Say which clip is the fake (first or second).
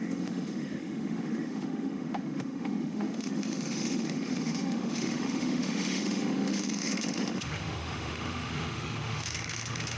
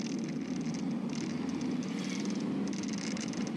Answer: first